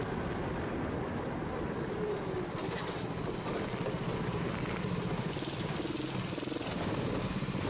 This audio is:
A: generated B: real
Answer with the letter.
B